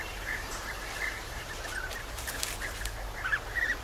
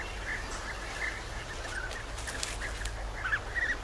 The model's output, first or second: first